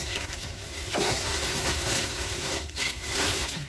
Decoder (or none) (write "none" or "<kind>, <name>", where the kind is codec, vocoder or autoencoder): codec, SNAC